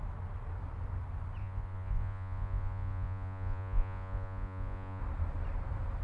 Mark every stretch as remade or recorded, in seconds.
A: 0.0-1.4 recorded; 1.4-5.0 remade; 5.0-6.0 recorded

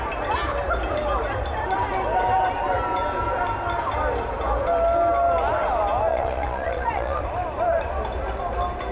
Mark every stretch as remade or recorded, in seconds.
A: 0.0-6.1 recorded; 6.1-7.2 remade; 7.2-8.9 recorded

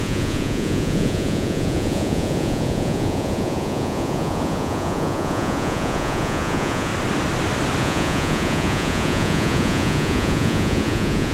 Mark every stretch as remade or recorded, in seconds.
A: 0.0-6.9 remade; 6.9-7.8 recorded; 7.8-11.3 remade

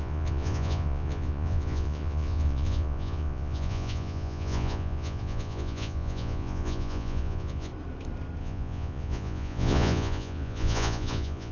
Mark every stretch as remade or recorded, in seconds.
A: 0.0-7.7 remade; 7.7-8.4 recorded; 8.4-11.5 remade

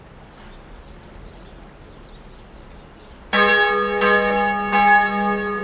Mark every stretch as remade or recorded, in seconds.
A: 0.0-5.6 recorded

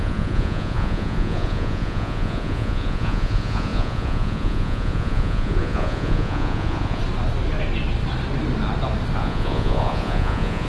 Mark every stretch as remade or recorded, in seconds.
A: 0.0-7.0 remade; 7.0-9.2 recorded; 9.2-10.7 remade

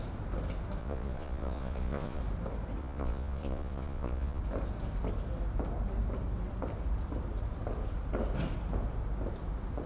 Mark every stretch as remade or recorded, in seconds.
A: 0.0-0.8 recorded; 0.8-2.2 remade; 2.2-2.8 recorded; 2.8-4.4 remade; 4.4-9.9 recorded

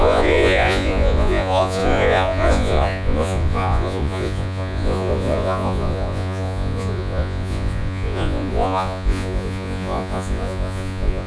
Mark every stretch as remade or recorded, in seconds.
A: 0.0-11.3 remade